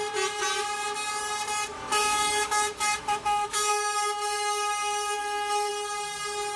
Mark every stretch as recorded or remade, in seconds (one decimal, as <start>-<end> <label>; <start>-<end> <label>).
0.0-1.7 recorded; 1.7-5.7 remade; 5.7-6.6 recorded